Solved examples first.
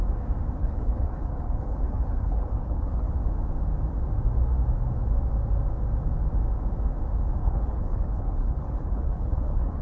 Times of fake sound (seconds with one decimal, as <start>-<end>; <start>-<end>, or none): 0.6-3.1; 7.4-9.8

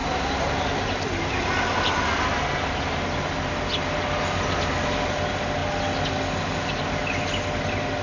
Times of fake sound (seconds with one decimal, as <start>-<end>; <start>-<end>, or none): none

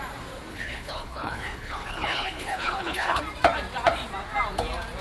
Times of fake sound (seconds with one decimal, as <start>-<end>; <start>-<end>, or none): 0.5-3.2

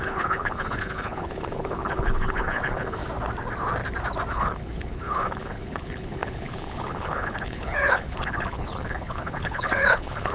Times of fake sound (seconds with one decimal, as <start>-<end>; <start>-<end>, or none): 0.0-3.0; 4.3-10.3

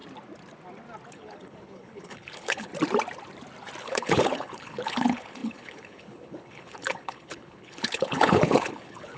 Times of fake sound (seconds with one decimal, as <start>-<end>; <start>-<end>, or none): 1.1-2.7; 3.8-9.2

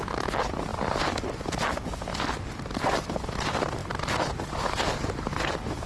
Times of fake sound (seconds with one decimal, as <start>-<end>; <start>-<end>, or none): none

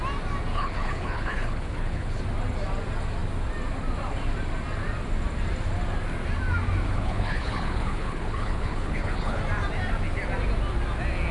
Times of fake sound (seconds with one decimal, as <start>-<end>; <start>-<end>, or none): 0.5-2.2; 6.8-9.4

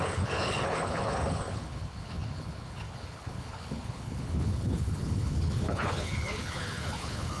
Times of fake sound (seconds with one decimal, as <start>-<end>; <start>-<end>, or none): 0.0-7.4